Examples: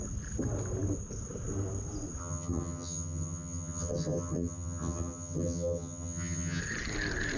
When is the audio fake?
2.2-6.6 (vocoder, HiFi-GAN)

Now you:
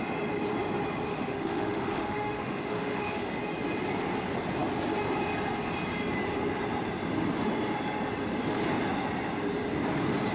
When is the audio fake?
1.1-3.4 (autoencoder, DAC-VAE)